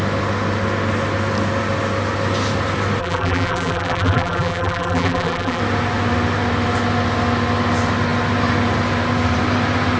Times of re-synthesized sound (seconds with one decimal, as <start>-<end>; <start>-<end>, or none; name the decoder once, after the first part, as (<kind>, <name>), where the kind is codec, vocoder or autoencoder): 3.0-5.6 (vocoder, BigVGAN v2)